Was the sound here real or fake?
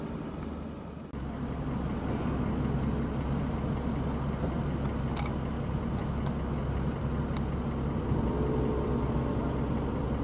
real